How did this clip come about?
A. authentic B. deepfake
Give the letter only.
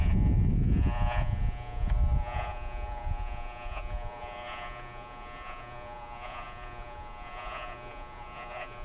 B